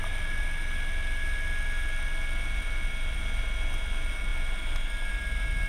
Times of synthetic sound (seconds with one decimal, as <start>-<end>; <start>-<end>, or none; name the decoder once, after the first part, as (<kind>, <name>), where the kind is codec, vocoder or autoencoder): none